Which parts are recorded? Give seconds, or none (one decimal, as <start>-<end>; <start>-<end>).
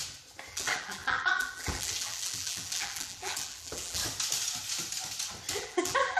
0.0-0.5; 4.0-5.5